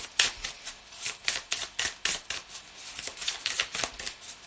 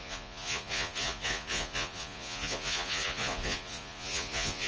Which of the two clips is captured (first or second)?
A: first